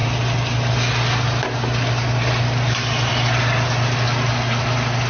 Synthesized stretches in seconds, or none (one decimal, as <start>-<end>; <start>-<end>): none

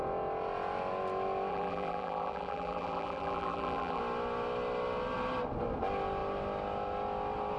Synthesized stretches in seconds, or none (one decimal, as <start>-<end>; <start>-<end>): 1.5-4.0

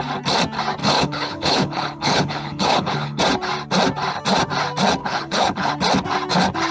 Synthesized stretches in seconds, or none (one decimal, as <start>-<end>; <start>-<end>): 0.8-3.2; 5.0-5.7

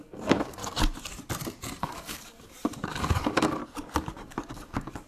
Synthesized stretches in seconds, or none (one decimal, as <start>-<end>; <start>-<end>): 0.0-0.6; 1.8-3.6; 4.1-5.1

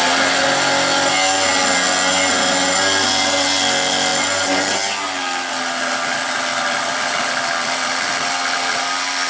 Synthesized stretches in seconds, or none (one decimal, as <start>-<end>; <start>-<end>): none

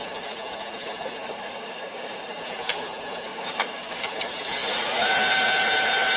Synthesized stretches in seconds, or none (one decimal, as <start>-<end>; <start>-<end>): 1.2-2.4; 3.3-4.0